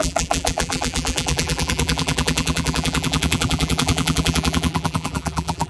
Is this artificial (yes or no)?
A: yes